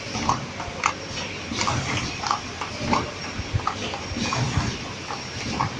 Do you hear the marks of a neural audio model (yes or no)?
no